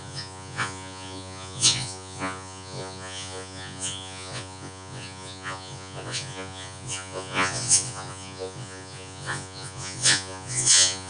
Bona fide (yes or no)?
no